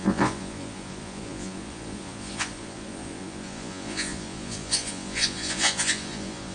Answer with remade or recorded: remade